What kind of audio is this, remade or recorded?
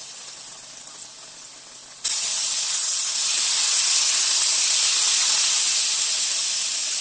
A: recorded